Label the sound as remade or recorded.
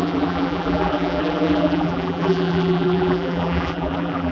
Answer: remade